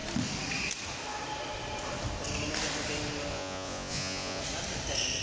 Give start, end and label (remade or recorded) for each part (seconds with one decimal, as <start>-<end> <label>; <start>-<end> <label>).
0.0-3.3 recorded; 3.3-4.4 remade; 4.4-5.2 recorded